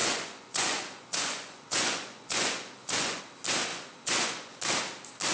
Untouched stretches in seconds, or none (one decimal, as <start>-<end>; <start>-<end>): 3.2-3.7; 4.6-5.3